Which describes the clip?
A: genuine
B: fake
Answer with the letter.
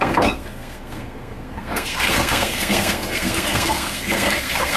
B